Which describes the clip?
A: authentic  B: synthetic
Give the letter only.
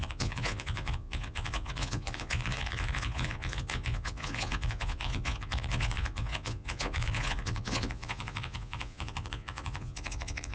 B